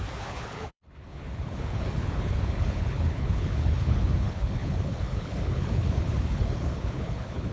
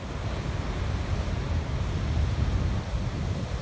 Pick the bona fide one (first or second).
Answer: second